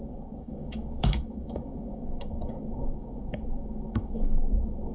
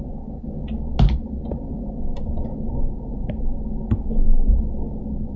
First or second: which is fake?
first